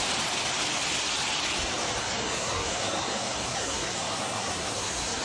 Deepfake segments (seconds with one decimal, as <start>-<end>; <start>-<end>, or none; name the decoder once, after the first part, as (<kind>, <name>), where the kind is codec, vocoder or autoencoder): 2.0-5.2 (codec, SNAC)